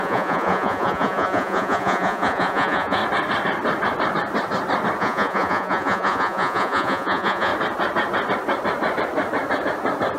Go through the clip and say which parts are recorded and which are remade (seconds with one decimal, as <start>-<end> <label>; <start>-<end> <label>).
0.0-3.0 remade; 3.0-5.0 recorded; 5.0-7.5 remade; 7.5-10.2 recorded